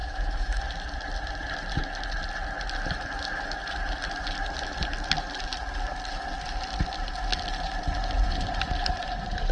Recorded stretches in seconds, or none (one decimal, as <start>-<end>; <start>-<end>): 0.6-9.5

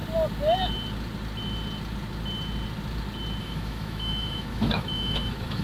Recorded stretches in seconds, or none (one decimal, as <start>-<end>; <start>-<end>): 0.0-3.4

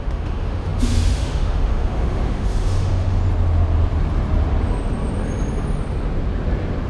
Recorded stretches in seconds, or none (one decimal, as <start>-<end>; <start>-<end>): 3.2-6.9

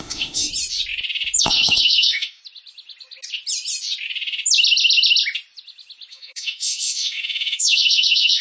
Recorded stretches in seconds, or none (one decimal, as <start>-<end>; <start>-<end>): 0.5-1.4; 2.4-6.1

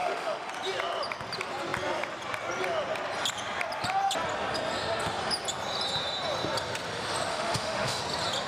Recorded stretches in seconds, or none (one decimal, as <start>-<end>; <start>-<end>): 0.5-7.3; 8.0-8.5

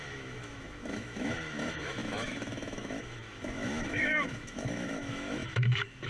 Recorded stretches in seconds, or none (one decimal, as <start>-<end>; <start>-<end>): none